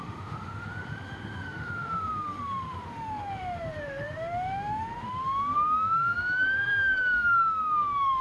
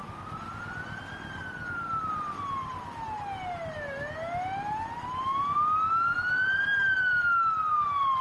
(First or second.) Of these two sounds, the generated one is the first